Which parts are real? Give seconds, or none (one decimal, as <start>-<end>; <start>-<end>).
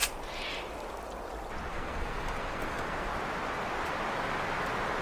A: 0.0-1.7; 3.1-5.0